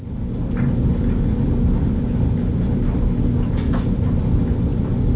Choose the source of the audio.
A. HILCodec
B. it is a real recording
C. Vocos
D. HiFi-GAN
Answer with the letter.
B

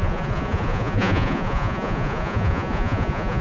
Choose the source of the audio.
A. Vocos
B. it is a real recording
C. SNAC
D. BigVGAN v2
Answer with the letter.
A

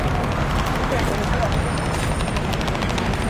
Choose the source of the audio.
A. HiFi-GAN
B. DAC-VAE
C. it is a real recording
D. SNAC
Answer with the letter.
C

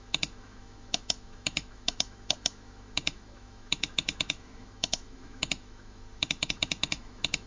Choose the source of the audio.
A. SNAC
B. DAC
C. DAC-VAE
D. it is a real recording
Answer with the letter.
C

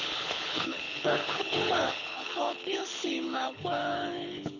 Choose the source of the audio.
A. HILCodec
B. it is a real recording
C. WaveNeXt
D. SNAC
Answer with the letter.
A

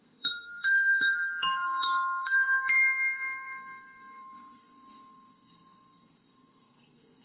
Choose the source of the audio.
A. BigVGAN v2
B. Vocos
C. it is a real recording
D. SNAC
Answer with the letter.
D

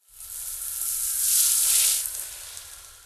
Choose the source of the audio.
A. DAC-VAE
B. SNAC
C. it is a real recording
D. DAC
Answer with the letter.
C